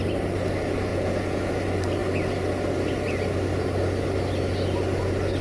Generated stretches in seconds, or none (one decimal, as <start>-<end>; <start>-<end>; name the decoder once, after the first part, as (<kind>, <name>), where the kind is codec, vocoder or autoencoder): 0.9-1.5 (vocoder, Vocos)